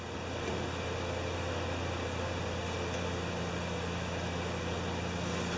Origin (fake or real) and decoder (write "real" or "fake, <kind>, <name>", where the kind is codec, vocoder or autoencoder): real